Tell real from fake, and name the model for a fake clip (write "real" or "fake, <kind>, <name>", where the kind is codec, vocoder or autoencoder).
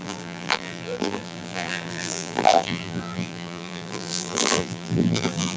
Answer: fake, vocoder, BigVGAN v2